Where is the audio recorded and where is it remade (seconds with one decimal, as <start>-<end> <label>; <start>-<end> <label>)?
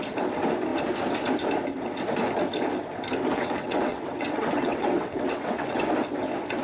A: 0.0-3.3 recorded; 3.3-5.9 remade; 5.9-6.6 recorded